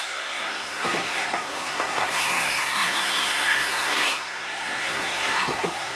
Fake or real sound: fake